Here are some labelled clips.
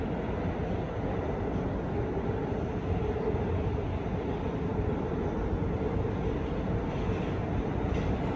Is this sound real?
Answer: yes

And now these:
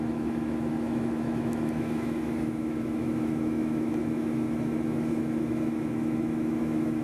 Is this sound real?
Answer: no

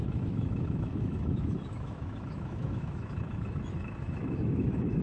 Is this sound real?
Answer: no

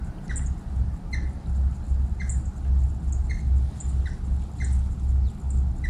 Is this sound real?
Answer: yes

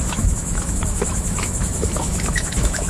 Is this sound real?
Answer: no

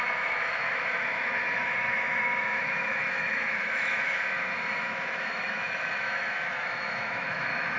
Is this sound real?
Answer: no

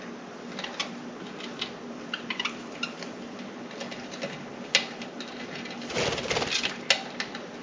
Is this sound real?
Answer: yes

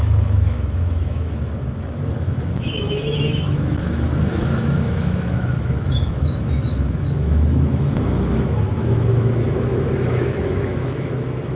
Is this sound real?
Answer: no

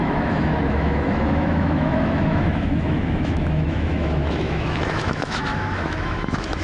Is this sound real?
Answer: no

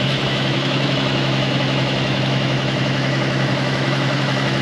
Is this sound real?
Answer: no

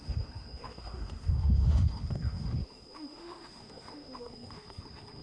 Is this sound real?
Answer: no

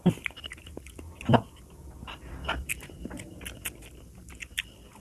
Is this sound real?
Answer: yes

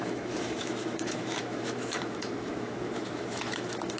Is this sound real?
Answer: no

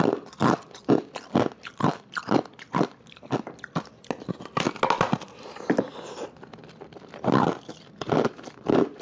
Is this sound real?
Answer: yes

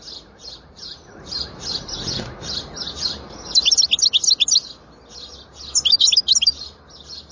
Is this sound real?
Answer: yes